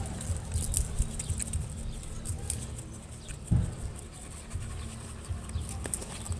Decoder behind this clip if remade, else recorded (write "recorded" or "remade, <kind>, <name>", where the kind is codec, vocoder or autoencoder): recorded